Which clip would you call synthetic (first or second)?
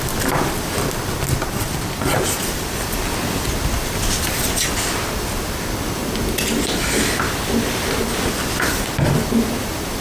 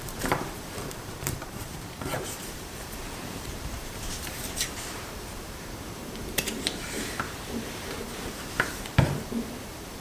second